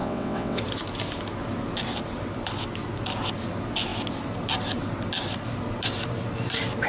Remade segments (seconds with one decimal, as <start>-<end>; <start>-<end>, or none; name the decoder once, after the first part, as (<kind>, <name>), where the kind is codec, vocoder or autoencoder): 0.0-0.6 (vocoder, WaveNeXt)